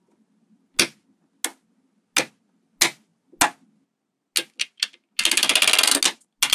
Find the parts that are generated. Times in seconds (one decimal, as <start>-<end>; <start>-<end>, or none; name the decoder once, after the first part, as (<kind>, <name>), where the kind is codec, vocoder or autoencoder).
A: none